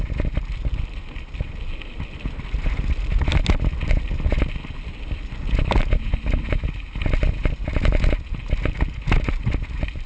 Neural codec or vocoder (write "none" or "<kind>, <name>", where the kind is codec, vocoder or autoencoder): none